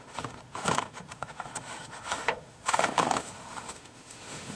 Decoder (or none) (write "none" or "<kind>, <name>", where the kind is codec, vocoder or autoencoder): autoencoder, DAC-VAE